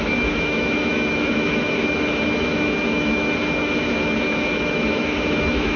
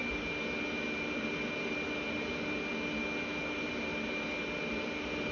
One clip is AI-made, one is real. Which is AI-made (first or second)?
first